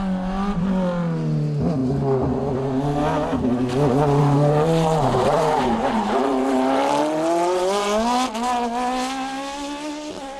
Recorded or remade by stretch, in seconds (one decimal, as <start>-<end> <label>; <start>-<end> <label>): 0.0-4.2 recorded; 4.2-7.0 remade; 7.0-10.4 recorded